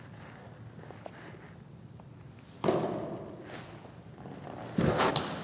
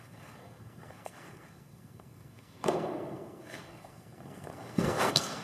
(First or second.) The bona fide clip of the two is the first